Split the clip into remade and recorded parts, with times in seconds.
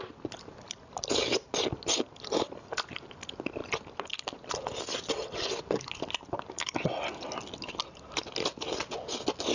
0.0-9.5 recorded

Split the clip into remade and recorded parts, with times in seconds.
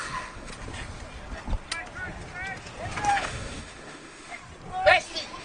0.0-0.5 remade; 0.5-3.1 recorded; 3.1-4.4 remade; 4.4-5.4 recorded